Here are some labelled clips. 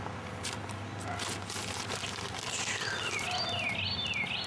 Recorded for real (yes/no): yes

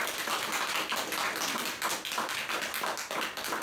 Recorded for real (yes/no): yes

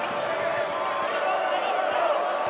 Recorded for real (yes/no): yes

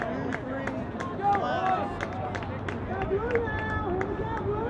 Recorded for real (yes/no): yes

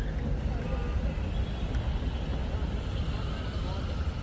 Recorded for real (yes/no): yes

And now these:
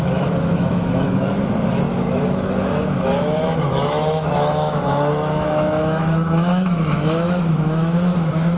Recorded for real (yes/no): no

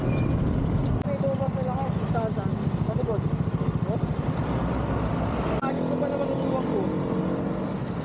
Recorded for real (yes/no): yes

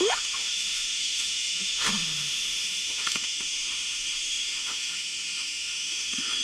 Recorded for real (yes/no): no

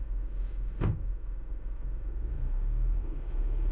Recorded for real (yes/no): no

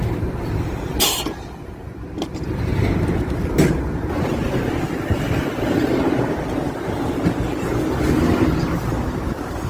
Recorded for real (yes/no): yes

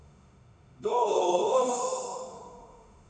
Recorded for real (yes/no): no